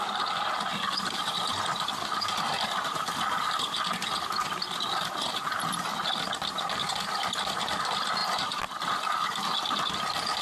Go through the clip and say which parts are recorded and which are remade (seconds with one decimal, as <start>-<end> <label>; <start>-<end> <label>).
0.0-10.4 recorded